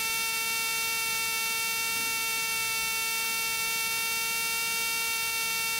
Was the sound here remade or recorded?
recorded